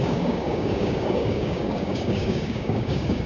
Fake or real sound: fake